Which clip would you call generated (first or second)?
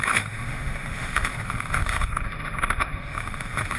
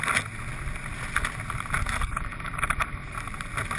first